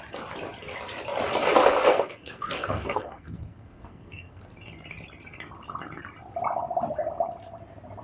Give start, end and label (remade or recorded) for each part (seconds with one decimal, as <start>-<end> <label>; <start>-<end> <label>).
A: 0.0-1.9 recorded; 1.9-4.4 remade; 4.4-8.0 recorded